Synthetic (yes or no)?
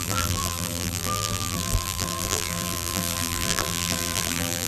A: yes